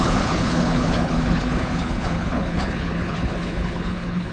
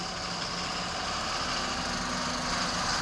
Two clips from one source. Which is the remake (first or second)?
first